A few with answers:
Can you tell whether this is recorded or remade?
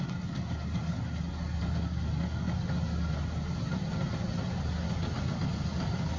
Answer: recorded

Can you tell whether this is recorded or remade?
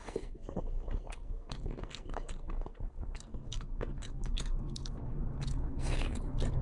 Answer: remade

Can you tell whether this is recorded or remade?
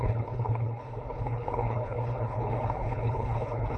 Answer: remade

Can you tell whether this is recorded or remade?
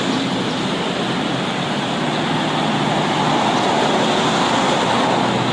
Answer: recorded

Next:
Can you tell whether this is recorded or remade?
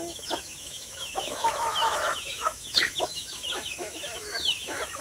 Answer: remade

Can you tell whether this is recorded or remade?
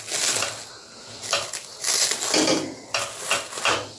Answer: recorded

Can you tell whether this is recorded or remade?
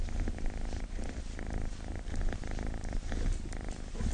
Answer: remade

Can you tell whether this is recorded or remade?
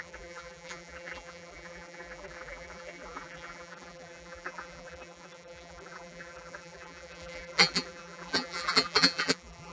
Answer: remade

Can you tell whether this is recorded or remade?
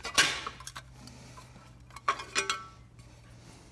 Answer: recorded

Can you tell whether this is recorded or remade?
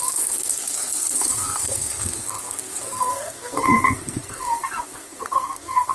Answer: remade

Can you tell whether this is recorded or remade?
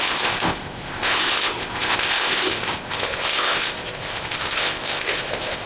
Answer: remade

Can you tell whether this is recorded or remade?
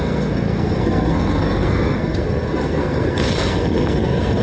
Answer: remade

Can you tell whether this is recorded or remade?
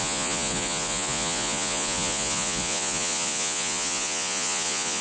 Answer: remade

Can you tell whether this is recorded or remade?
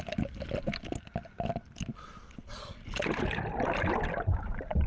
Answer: recorded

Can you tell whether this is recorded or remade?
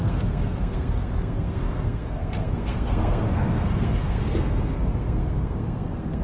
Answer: remade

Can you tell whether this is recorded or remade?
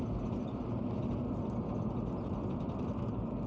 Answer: recorded